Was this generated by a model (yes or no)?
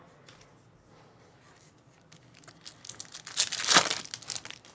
no